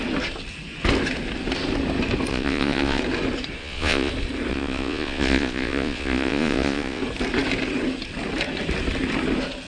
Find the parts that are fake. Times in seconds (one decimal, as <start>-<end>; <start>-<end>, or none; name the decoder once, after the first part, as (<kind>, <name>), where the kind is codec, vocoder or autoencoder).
2.3-3.0 (vocoder, Vocos); 3.6-4.1; 4.5-7.0